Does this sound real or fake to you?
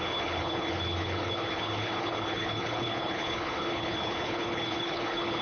fake